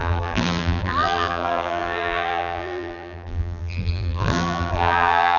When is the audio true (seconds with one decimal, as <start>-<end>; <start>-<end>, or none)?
none